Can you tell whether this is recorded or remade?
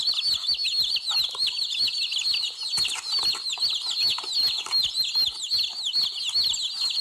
recorded